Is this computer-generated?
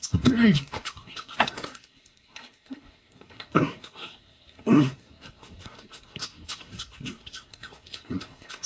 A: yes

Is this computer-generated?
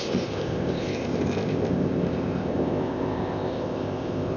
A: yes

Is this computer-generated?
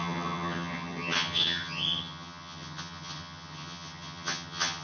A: yes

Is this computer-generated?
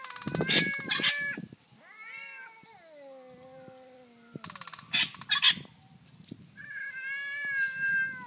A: no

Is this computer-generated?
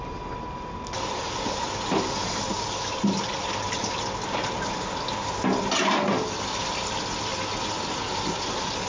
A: no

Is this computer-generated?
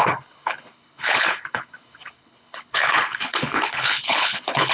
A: yes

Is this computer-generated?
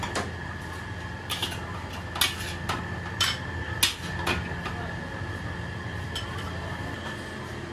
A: no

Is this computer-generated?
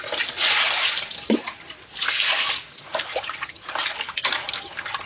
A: no